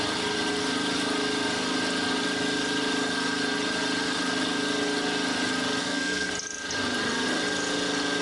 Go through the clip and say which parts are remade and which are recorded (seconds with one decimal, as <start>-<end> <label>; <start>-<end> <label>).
0.0-5.8 recorded; 5.8-6.3 remade; 6.3-8.2 recorded